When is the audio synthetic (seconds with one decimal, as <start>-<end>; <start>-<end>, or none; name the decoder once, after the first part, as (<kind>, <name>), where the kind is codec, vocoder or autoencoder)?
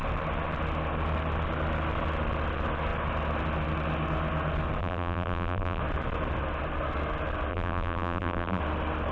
4.8-5.8 (vocoder, BigVGAN v2); 7.5-8.6